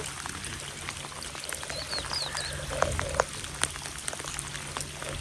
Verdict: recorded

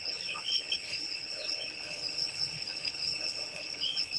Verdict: remade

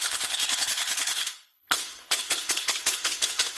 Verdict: remade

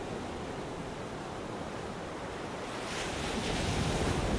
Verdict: recorded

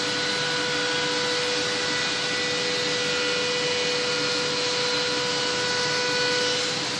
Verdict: recorded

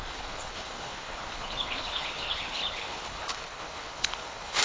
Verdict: remade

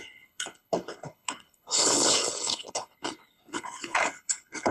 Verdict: remade